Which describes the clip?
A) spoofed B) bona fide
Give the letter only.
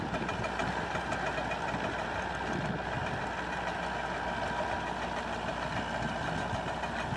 B